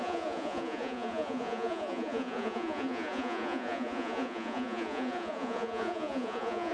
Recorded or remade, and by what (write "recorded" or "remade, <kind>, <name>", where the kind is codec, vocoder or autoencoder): remade, vocoder, Vocos